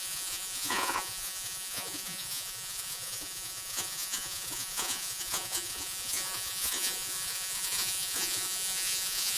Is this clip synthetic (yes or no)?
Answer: yes